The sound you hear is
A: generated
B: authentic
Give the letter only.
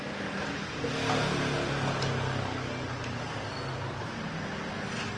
B